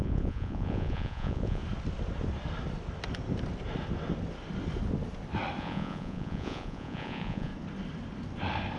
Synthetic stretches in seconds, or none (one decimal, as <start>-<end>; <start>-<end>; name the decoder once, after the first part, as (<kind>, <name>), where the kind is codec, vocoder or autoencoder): 0.0-1.6 (vocoder, Vocos); 5.6-7.5